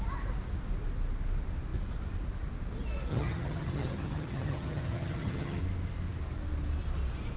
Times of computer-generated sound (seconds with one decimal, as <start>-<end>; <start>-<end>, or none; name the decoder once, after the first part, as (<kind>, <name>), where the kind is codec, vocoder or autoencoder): 3.1-5.6 (vocoder, HiFi-GAN)